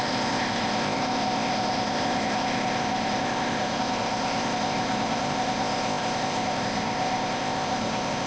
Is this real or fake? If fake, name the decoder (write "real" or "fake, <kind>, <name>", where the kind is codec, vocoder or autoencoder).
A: fake, codec, ZipCodec